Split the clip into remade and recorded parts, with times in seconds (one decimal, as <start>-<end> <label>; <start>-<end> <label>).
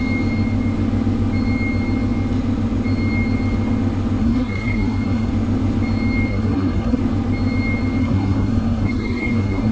0.0-4.2 recorded; 4.2-5.3 remade; 5.3-6.3 recorded; 6.3-7.0 remade; 7.0-8.0 recorded; 8.0-9.7 remade